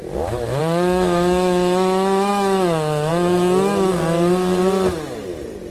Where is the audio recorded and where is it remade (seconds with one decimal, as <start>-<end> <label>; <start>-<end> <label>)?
0.0-3.9 remade; 3.9-5.7 recorded